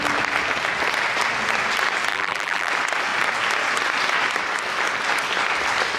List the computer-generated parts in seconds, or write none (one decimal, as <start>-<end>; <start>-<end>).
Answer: 2.1-2.7